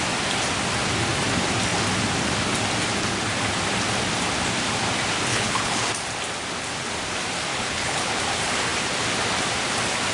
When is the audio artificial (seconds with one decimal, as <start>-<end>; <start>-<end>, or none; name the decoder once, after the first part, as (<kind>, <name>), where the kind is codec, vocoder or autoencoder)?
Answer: 5.3-5.9 (codec, HILCodec); 7.5-8.2